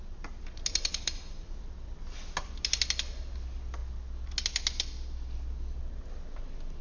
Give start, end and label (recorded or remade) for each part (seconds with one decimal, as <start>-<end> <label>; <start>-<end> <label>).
0.0-6.8 recorded